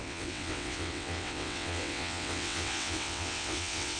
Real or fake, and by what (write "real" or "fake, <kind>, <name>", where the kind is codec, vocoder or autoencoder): fake, vocoder, WaveNeXt